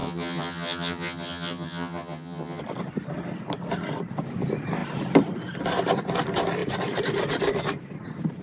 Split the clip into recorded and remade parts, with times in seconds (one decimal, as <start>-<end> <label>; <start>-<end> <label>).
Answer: 0.0-2.6 remade; 2.6-8.4 recorded